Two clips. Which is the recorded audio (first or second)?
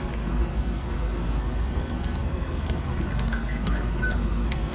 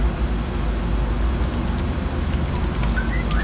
second